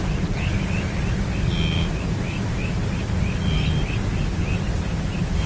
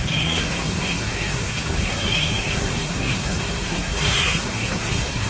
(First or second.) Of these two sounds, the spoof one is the second